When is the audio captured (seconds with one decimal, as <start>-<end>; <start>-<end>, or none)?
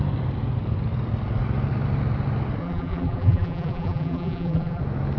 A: 0.0-2.6; 4.8-5.2